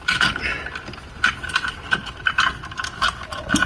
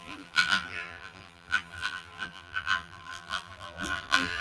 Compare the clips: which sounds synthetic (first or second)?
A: second